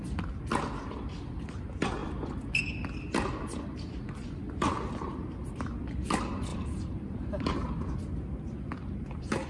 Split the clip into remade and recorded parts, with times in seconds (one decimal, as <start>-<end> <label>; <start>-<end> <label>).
0.0-6.5 recorded; 6.5-7.8 remade; 7.8-9.5 recorded